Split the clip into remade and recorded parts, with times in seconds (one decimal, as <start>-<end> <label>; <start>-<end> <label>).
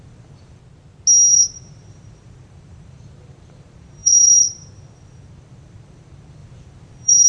0.0-0.6 remade; 0.6-1.3 recorded; 1.3-7.3 remade